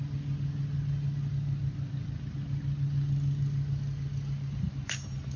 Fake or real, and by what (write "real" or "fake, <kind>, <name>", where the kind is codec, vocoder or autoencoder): real